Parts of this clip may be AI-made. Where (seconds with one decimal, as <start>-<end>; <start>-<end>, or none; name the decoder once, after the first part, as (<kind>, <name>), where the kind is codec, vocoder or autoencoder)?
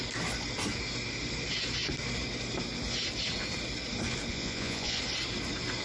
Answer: 4.3-5.0 (vocoder, Vocos)